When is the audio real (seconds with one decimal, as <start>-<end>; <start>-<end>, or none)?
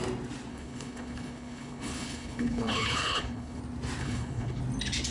0.0-0.5; 3.6-4.0; 4.6-5.1